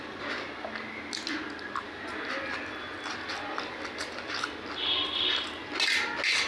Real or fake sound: real